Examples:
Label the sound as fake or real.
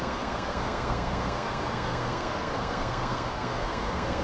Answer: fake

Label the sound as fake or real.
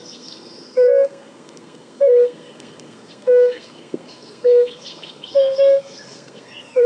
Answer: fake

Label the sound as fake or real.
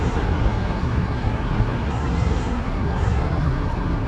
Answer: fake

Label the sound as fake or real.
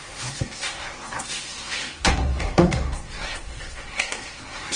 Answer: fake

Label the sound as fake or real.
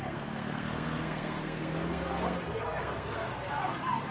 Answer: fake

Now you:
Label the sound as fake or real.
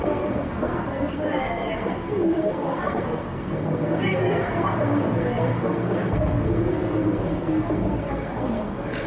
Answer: fake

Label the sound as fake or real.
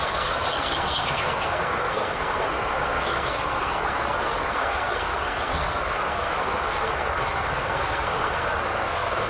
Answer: fake